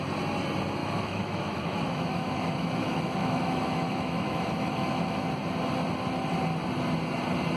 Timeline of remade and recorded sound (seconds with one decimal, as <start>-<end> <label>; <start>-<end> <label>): 0.0-0.8 recorded; 0.8-5.3 remade; 5.3-7.6 recorded